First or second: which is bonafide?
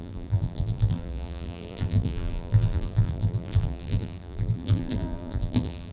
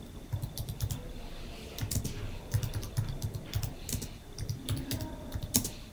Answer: second